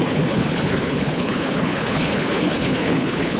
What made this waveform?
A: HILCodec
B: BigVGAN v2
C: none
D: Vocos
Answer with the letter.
A